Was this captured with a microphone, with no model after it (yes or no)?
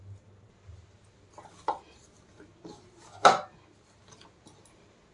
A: yes